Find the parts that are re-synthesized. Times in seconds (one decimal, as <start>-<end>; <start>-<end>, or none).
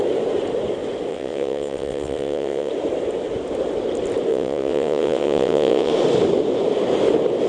1.1-2.7; 4.3-5.9